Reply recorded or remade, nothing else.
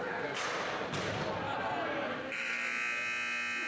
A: recorded